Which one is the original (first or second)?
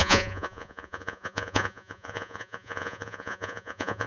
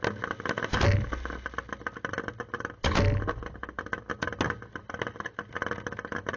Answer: second